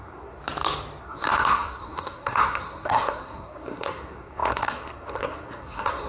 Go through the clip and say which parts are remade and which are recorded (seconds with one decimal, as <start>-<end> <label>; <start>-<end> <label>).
0.0-0.4 remade; 0.4-1.0 recorded; 1.0-6.1 remade